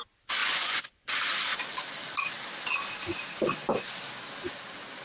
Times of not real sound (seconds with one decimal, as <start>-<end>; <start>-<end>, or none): 0.4-1.1